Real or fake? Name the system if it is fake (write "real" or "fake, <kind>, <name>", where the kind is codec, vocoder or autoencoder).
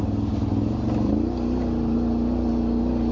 real